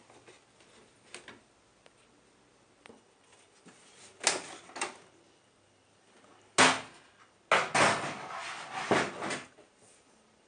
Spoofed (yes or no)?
no